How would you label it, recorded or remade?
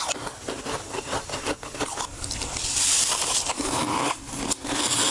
recorded